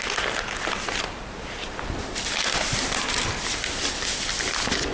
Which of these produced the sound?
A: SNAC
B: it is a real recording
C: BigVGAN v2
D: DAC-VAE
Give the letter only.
B